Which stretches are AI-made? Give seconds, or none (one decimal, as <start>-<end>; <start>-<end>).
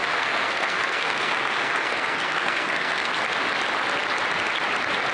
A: 0.0-3.1